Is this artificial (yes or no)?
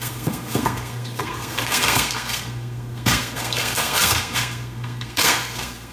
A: yes